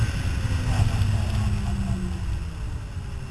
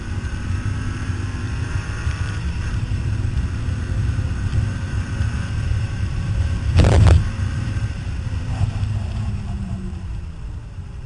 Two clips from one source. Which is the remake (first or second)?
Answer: second